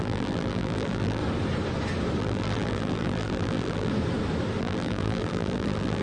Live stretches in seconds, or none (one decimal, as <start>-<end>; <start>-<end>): 1.2-2.2; 3.9-4.6